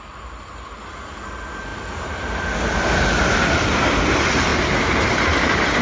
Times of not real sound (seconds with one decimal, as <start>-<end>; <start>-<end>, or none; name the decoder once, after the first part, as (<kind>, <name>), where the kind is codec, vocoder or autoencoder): none